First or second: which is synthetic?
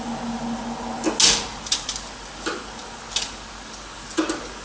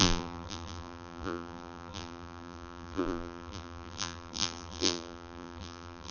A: second